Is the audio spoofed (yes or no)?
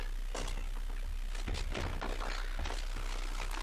no